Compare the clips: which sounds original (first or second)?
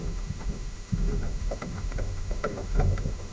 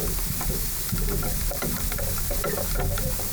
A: second